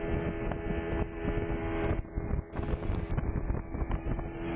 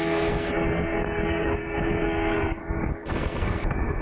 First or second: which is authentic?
first